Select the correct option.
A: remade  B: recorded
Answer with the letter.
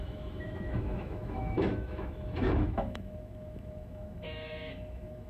A